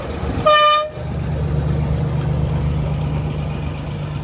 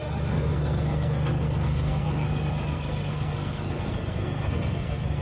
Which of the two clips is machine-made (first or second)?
second